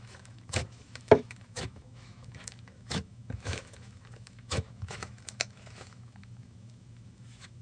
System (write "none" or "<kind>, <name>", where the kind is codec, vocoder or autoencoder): autoencoder, DAC-VAE